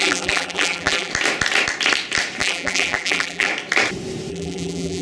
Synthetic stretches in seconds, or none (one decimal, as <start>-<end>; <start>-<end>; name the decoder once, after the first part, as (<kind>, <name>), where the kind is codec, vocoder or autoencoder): 0.0-1.1 (vocoder, BigVGAN v2); 2.4-3.5; 4.3-5.0